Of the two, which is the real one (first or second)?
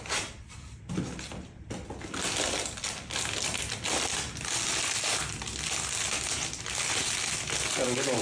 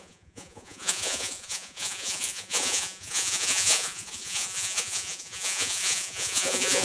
first